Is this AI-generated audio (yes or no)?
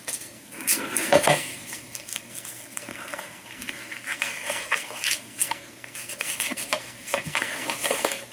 yes